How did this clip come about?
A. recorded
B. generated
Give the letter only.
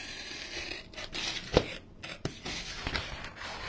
A